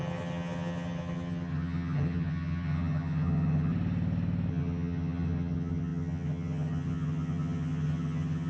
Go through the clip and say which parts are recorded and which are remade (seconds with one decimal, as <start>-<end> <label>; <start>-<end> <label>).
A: 0.0-3.7 remade; 3.7-4.5 recorded; 4.5-8.5 remade